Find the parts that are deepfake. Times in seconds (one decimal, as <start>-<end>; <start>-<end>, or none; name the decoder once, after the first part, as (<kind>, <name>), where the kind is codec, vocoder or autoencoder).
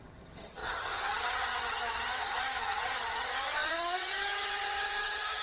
0.0-5.4 (vocoder, HiFi-GAN)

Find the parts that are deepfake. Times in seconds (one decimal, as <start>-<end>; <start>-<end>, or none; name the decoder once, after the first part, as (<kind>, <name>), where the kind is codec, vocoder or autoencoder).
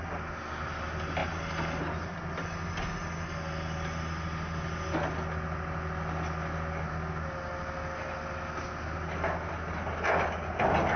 none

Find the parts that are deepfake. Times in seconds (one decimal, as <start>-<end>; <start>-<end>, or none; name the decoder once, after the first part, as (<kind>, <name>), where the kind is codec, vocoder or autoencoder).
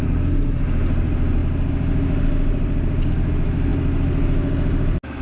none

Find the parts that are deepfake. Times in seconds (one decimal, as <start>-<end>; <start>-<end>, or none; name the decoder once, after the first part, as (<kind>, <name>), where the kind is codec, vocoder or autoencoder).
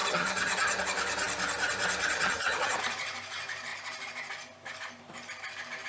0.0-0.8 (vocoder, HiFi-GAN); 2.1-2.8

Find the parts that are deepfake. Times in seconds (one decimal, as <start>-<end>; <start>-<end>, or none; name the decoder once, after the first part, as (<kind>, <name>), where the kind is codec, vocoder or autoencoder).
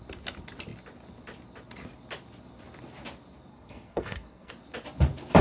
3.5-4.5 (codec, SNAC)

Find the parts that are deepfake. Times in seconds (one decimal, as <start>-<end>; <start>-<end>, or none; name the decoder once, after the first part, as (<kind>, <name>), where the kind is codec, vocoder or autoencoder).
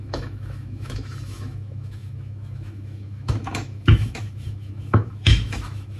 0.0-6.0 (autoencoder, DAC-VAE)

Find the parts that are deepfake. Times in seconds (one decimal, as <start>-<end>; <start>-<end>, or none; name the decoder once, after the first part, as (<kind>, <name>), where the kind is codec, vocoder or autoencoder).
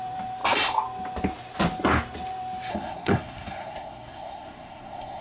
2.7-5.2 (codec, SNAC)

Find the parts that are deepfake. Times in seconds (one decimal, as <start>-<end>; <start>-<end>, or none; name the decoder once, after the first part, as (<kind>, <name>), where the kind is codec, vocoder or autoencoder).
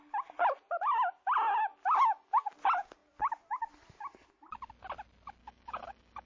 5.4-6.3 (codec, DAC)